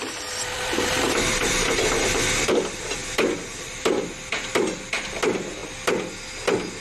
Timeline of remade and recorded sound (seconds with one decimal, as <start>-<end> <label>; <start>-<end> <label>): 0.0-3.0 remade; 3.0-5.1 recorded; 5.1-5.6 remade; 5.6-6.8 recorded